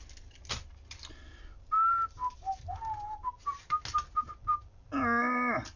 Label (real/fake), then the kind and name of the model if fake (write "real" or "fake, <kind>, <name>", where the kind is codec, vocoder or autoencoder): real